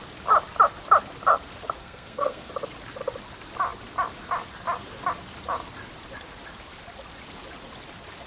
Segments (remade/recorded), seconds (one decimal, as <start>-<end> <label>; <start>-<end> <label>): 0.0-1.8 recorded; 1.8-2.5 remade; 2.5-8.3 recorded